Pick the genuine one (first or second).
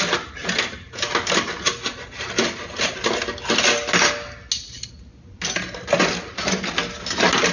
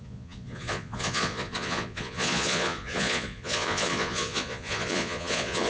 first